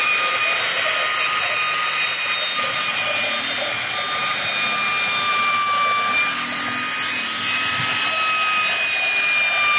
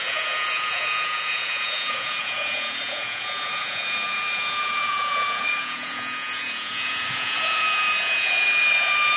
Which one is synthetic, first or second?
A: second